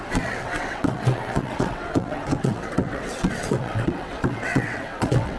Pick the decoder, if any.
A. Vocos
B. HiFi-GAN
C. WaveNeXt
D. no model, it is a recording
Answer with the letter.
C